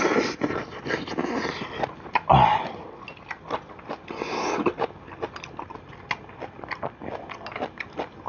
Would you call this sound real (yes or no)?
yes